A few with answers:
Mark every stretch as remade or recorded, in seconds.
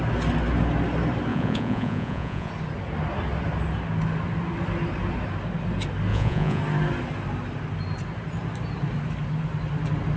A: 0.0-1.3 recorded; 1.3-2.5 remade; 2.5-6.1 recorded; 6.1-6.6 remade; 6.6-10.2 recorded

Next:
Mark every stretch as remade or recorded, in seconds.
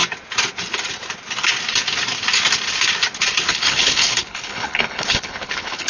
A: 0.0-3.5 recorded; 3.5-5.9 remade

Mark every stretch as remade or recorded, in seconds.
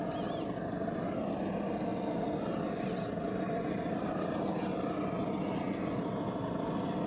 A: 0.0-7.1 recorded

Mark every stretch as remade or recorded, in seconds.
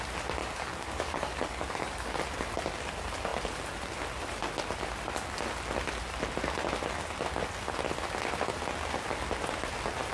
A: 0.0-0.4 recorded; 0.4-2.2 remade; 2.2-10.1 recorded